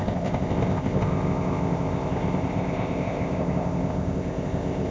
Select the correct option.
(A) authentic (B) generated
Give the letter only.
B